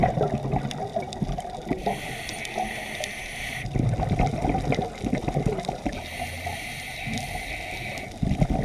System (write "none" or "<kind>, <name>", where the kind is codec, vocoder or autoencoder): none